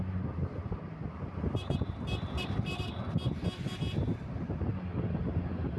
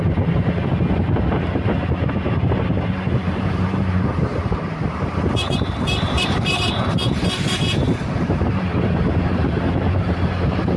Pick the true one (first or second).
first